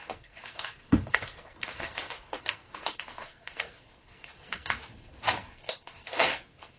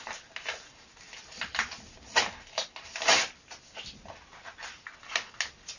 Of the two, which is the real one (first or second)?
second